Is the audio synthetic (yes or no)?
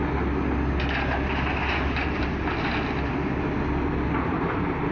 no